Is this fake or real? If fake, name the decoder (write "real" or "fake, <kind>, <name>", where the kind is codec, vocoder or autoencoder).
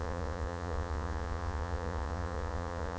fake, vocoder, Vocos